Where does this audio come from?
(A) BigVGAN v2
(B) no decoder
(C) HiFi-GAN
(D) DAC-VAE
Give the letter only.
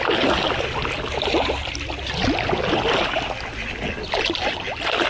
B